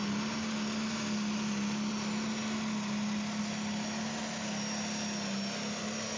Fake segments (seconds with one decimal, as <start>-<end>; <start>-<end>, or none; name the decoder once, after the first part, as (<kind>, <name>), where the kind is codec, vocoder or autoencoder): none

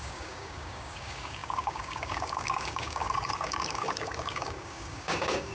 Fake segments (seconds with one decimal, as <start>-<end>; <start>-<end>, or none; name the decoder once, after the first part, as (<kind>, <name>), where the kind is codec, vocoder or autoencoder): 0.0-5.5 (codec, DAC)